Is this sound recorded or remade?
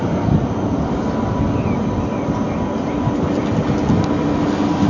recorded